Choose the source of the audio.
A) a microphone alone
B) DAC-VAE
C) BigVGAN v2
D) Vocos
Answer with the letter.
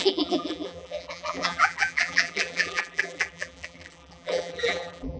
C